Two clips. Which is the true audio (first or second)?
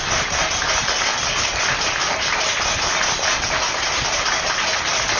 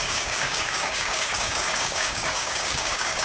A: first